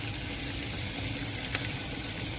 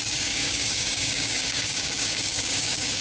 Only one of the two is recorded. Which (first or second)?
first